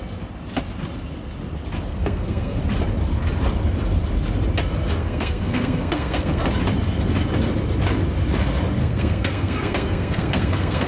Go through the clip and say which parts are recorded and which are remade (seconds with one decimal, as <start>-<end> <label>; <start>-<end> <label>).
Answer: 0.0-1.9 recorded; 1.9-2.6 remade; 2.6-5.0 recorded; 5.0-6.4 remade; 6.4-8.8 recorded; 8.8-10.9 remade